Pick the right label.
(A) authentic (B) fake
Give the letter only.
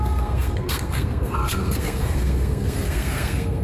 B